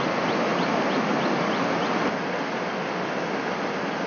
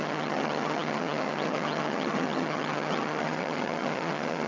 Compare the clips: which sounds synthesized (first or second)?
second